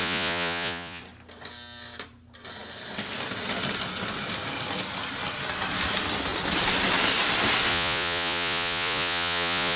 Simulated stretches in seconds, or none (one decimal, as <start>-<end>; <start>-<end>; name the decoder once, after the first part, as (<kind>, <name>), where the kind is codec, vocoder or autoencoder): 0.0-1.0 (vocoder, Vocos); 7.7-9.8